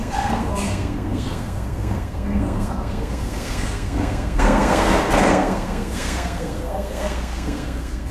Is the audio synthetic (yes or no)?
yes